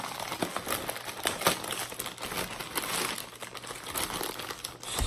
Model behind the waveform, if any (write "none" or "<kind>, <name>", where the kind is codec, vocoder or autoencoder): none